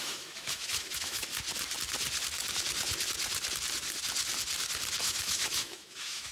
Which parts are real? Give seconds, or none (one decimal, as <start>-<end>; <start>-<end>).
1.2-5.0